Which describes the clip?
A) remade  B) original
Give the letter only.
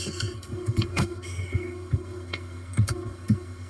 A